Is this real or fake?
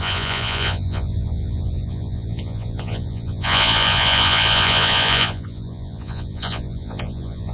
fake